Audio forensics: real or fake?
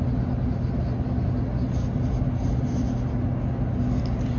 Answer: real